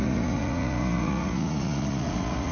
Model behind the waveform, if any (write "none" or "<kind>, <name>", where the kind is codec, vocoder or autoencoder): vocoder, Vocos